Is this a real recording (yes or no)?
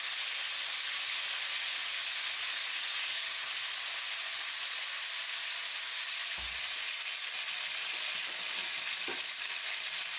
yes